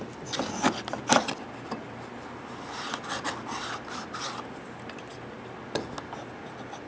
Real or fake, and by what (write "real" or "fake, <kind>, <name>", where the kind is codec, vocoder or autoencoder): real